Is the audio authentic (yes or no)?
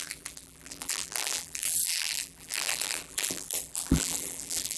no